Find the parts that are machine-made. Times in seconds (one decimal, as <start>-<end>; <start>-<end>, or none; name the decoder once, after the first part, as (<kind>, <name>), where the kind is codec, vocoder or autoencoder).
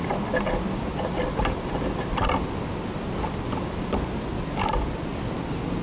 none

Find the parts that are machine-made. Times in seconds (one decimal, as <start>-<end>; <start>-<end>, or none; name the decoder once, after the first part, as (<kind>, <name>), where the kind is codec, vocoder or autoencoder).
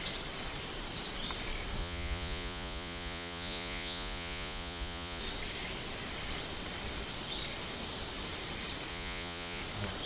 1.8-5.2 (vocoder, Vocos); 8.9-9.6